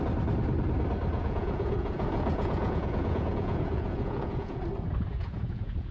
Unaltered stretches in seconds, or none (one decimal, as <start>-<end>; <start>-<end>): 0.0-1.1; 4.6-5.1

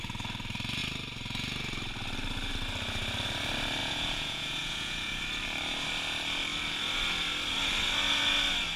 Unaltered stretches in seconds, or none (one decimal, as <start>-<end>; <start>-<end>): 0.0-3.8; 5.2-8.8

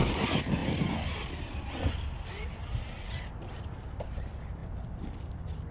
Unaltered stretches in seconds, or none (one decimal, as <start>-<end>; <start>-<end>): 0.0-5.7

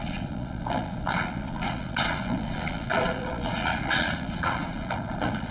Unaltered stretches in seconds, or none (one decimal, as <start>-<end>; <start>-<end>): none

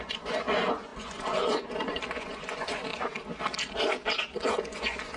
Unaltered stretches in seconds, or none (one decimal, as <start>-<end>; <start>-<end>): 2.9-4.5

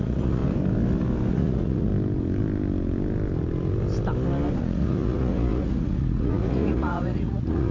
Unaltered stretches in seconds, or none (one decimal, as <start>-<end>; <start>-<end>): 0.4-1.3; 1.9-4.6

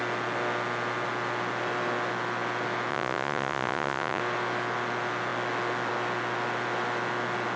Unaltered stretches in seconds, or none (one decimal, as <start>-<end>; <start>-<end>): 0.0-2.9; 4.2-7.6

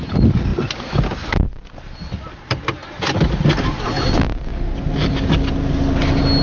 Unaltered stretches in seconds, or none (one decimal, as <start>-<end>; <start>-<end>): 0.0-6.4